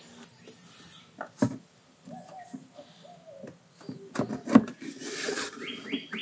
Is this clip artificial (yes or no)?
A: no